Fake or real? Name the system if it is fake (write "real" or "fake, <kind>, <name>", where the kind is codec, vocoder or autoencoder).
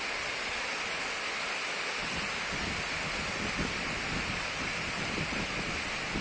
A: real